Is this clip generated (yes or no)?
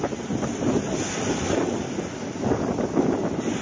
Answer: no